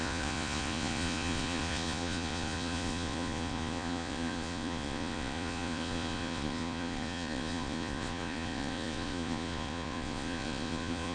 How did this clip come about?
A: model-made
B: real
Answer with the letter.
A